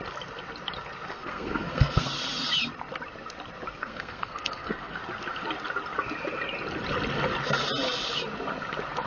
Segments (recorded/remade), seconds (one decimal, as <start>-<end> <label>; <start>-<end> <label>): 0.0-1.1 recorded; 1.1-2.1 remade; 2.1-3.8 recorded; 3.8-5.0 remade; 5.0-9.1 recorded